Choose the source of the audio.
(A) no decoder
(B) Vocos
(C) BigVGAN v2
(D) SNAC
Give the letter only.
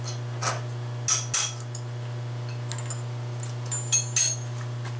A